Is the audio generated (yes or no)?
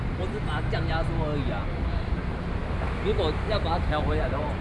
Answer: no